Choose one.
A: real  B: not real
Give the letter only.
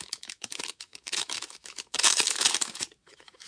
B